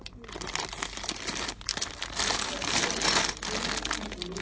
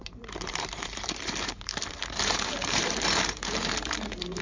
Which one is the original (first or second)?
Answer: first